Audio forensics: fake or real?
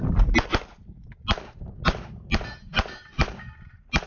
real